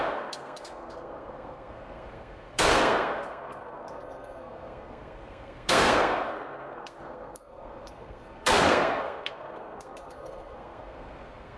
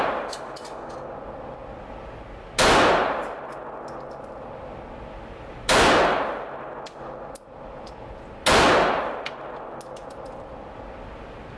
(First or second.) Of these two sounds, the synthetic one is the first